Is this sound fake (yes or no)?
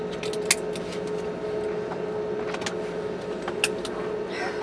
no